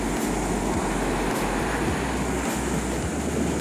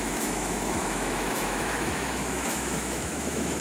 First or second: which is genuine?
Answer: first